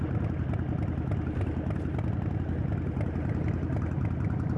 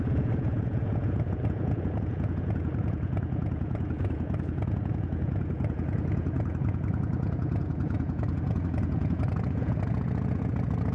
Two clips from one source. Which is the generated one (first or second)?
second